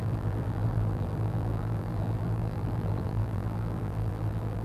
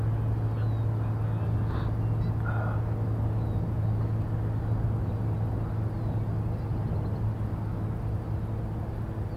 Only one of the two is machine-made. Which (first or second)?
first